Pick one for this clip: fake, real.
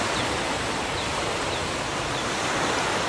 fake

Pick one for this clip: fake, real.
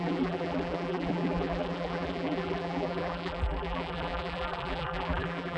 fake